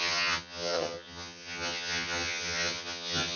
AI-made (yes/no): yes